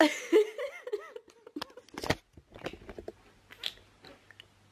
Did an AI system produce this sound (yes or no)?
no